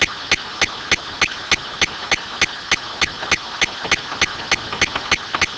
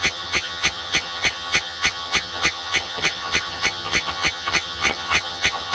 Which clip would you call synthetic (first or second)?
second